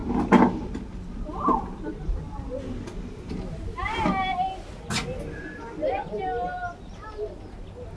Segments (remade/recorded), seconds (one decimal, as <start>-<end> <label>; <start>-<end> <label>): 0.0-8.0 recorded